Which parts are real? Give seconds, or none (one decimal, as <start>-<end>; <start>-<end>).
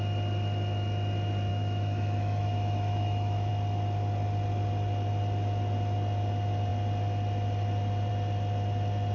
0.0-1.5; 3.5-9.1